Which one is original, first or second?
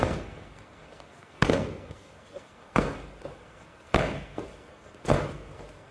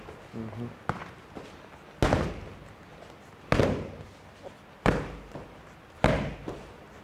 second